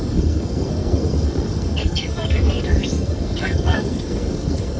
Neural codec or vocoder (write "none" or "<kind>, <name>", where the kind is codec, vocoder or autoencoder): codec, SNAC